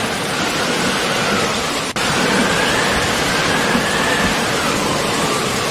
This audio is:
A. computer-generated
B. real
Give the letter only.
B